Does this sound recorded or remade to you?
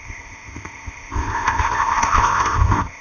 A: remade